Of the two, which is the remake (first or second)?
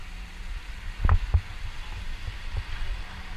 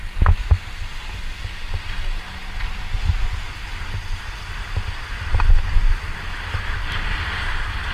first